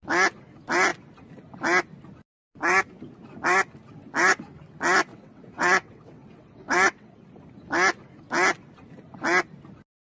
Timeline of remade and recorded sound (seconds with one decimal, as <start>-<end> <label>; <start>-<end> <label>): 0.0-5.1 recorded; 5.1-7.1 remade; 7.1-10.0 recorded